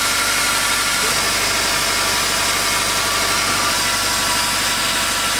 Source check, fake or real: real